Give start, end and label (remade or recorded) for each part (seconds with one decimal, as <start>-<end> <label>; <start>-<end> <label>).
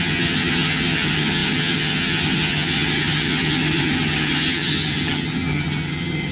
0.0-6.3 remade